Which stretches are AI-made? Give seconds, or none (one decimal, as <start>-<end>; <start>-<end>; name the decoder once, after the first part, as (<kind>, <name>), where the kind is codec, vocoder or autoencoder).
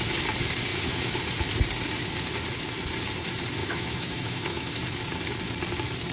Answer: 0.7-1.2 (autoencoder, DAC-VAE); 3.6-4.8